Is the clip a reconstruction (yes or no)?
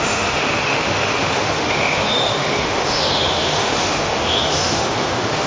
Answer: yes